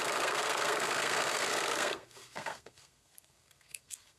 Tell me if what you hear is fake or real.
fake